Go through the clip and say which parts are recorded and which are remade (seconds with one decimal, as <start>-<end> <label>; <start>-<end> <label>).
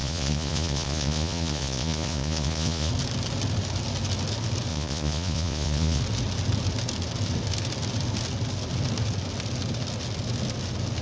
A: 0.0-2.9 remade; 2.9-4.7 recorded; 4.7-6.0 remade; 6.0-11.0 recorded